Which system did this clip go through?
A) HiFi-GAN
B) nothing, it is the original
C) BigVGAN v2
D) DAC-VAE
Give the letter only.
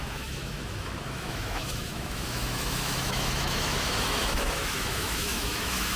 D